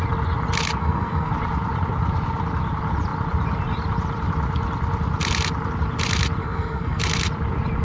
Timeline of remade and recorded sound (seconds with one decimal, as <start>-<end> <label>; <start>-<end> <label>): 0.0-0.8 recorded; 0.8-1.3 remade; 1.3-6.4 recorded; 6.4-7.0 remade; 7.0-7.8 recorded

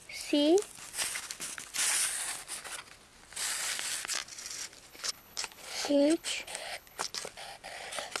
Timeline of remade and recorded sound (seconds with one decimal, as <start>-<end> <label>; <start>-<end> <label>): 0.0-4.9 recorded; 4.9-7.1 remade; 7.1-8.2 recorded

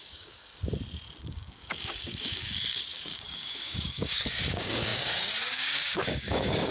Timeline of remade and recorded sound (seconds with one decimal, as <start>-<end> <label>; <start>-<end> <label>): 0.0-0.5 remade; 0.5-1.2 recorded; 1.2-6.7 remade

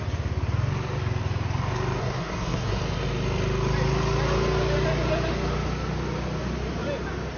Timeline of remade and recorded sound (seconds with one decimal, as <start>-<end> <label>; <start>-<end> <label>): 0.0-2.0 recorded; 2.0-2.8 remade; 2.8-7.4 recorded